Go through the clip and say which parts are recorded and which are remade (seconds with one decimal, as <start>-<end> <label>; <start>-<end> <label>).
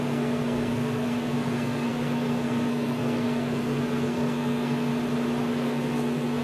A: 0.0-4.9 remade; 4.9-5.4 recorded; 5.4-6.4 remade